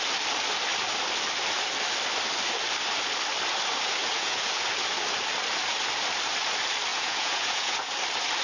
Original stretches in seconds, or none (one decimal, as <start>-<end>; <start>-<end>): 0.0-4.0; 4.6-6.9; 7.9-8.4